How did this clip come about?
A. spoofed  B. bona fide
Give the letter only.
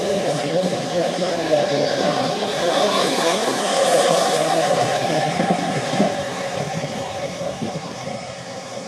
A